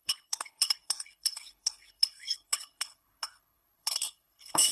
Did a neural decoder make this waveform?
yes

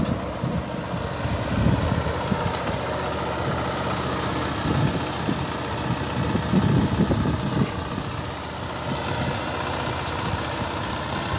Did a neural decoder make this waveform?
no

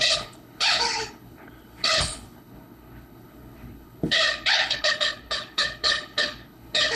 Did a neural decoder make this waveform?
yes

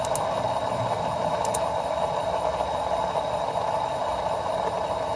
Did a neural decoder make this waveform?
no